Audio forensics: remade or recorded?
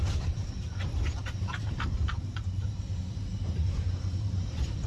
remade